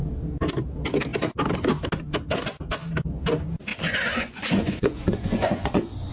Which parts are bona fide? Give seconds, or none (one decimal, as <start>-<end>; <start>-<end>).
0.0-3.7